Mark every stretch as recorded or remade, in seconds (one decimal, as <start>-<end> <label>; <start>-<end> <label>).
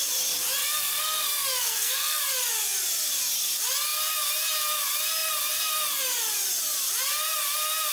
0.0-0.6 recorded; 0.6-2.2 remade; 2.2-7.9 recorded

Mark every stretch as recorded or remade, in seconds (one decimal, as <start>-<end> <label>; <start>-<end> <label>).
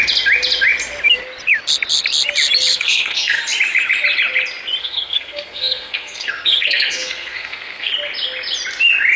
0.0-2.7 recorded; 2.7-3.4 remade; 3.4-4.8 recorded; 4.8-7.9 remade; 7.9-9.2 recorded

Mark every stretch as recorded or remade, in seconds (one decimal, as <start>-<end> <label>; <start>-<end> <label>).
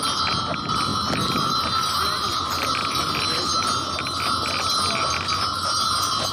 0.0-6.3 recorded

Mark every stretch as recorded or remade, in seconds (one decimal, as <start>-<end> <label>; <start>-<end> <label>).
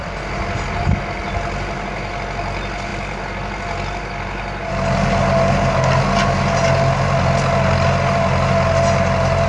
0.0-9.5 recorded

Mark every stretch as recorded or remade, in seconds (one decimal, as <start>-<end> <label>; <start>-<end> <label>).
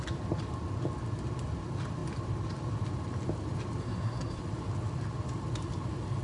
0.0-3.8 recorded; 3.8-4.4 remade; 4.4-6.2 recorded